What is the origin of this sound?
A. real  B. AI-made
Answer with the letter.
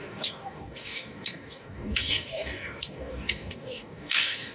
B